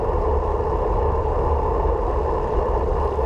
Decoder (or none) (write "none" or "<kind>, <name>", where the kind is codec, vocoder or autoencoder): none